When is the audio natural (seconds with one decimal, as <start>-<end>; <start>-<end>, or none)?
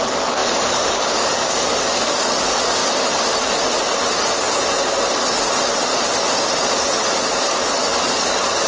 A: 2.8-7.4